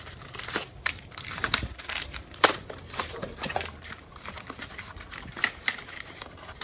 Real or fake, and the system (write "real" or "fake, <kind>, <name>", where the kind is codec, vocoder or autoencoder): fake, vocoder, BigVGAN v2